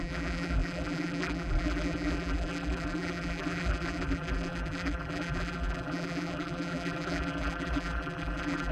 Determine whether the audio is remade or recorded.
remade